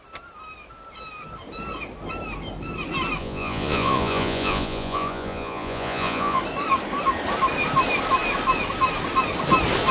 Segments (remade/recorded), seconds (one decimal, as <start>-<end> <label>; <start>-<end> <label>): 0.0-3.2 recorded; 3.2-6.4 remade; 6.4-9.9 recorded